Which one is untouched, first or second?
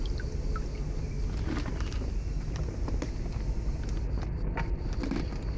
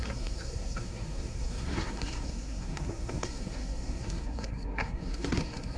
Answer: first